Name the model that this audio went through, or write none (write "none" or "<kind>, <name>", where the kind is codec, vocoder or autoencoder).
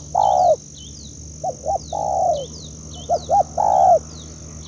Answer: none